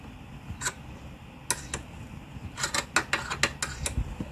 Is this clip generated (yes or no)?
no